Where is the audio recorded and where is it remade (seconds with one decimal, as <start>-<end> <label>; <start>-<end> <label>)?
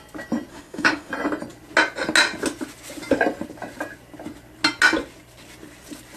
0.0-0.5 recorded; 0.5-1.1 remade; 1.1-6.2 recorded